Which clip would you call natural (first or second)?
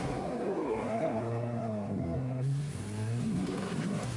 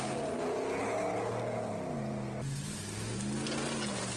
second